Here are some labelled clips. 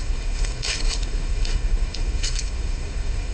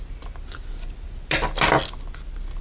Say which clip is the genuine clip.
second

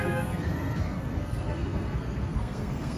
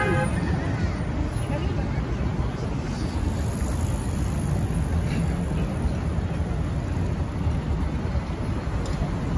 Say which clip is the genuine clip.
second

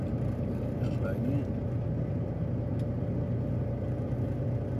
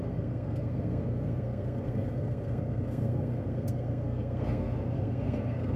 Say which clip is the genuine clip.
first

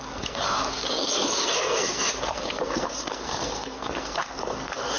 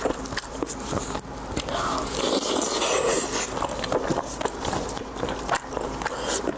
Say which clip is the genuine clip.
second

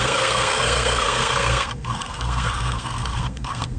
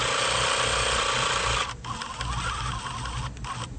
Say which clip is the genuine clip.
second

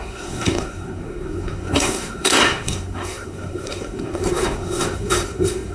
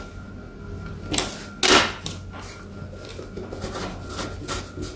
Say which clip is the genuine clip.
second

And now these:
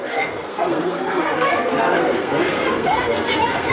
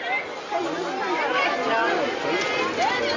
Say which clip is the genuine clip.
second